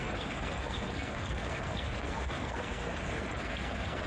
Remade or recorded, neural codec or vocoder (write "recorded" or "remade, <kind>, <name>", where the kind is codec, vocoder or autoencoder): remade, codec, SNAC